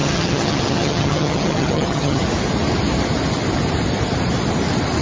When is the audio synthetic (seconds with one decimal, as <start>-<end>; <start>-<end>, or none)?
0.0-2.2